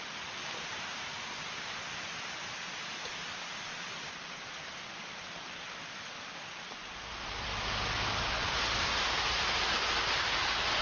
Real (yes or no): yes